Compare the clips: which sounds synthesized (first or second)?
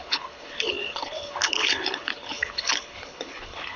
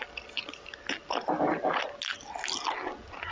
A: first